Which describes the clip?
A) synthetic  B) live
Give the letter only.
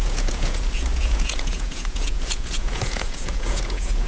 A